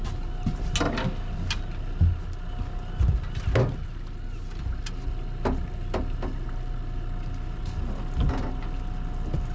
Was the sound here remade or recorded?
recorded